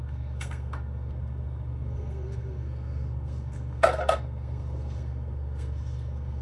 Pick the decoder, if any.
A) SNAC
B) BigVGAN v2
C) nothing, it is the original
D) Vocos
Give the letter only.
A